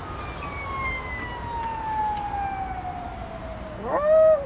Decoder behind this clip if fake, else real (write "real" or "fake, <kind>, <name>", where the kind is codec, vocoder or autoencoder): real